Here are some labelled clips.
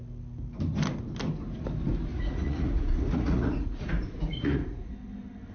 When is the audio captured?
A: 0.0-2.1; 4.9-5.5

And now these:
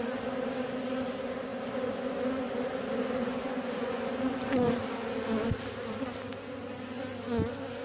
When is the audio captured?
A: 0.0-3.2; 4.1-7.8

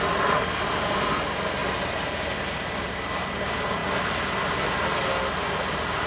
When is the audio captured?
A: 0.0-6.1

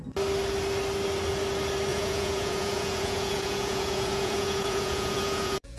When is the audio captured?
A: 0.0-1.9

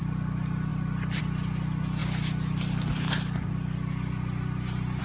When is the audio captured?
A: 0.0-5.0

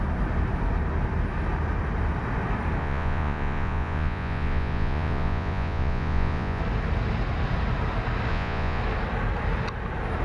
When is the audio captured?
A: 0.0-2.8; 6.6-8.3; 8.8-10.2